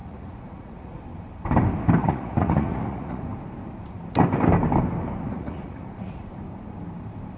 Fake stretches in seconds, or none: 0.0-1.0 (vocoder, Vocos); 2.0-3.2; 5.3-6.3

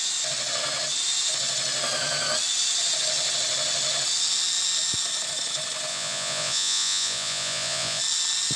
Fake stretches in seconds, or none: 5.9-8.0 (vocoder, Vocos)